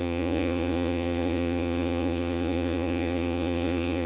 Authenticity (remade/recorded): remade